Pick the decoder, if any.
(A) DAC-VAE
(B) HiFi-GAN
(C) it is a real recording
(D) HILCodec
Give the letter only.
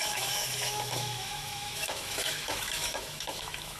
A